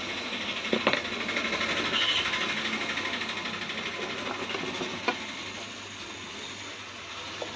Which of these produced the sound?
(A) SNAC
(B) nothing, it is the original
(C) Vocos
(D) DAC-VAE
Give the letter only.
B